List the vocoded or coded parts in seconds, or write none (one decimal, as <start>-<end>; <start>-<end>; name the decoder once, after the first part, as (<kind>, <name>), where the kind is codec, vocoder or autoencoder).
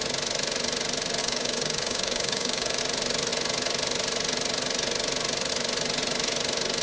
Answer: 1.2-2.8 (codec, DAC)